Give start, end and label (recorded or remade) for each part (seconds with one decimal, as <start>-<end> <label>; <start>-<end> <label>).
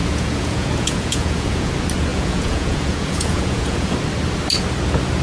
0.0-1.7 remade; 1.7-2.1 recorded; 2.1-3.9 remade; 3.9-5.2 recorded